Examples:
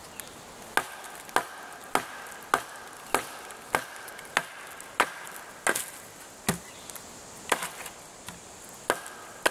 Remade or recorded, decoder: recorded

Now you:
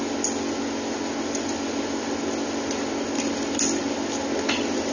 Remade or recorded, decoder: recorded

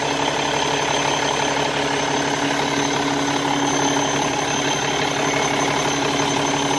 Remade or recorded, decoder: recorded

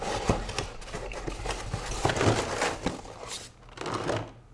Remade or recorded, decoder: recorded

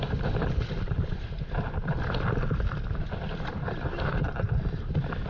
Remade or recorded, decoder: recorded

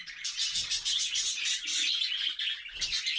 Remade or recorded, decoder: recorded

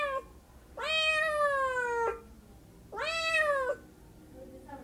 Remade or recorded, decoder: recorded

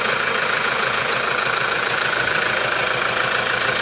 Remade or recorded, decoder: remade, vocoder, Vocos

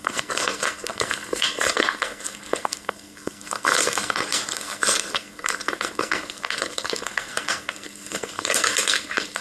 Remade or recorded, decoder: remade, codec, SNAC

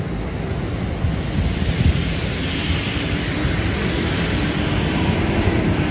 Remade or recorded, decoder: recorded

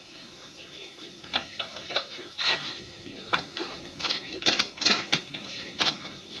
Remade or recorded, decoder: remade, codec, SNAC